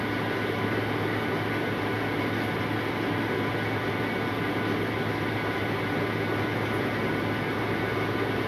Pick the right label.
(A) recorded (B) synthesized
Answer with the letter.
A